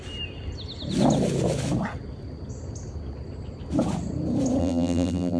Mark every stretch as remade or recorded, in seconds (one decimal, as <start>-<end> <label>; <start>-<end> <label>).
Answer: 0.0-4.6 recorded; 4.6-5.4 remade